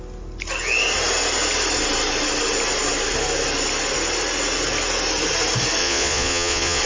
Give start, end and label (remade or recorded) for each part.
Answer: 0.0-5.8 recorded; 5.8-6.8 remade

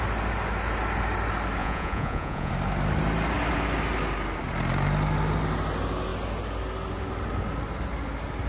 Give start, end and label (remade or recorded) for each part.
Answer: 0.0-1.6 recorded; 1.6-2.5 remade; 2.5-8.5 recorded